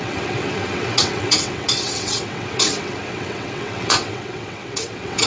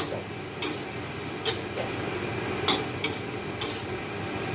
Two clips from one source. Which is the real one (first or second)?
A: second